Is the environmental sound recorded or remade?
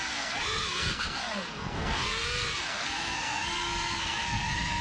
remade